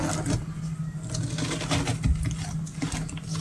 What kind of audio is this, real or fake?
real